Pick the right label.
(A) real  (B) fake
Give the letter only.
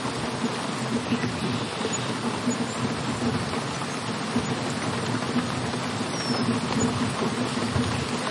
A